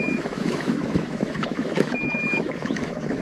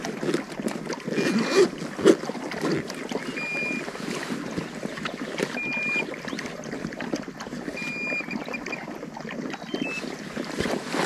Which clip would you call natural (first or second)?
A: second